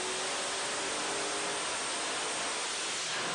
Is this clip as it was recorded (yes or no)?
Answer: yes